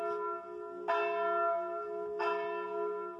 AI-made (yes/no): no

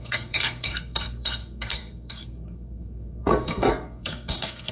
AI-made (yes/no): yes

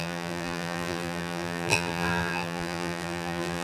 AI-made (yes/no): yes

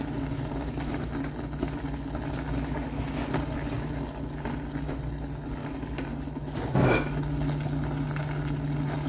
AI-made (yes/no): no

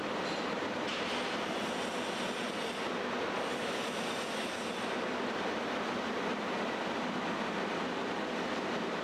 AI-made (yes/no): no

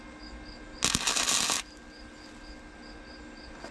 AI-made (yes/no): no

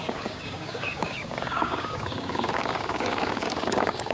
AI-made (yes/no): yes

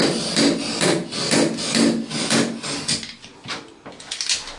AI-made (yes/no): no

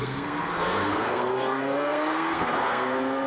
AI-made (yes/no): yes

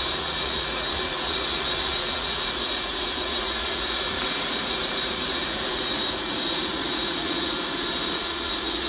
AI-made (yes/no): yes